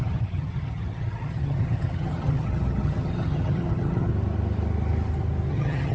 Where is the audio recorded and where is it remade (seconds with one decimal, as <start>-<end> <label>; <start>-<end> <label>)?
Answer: 0.0-4.1 remade; 4.1-5.5 recorded; 5.5-5.9 remade